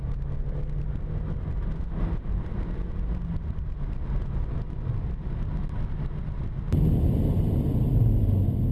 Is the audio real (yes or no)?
yes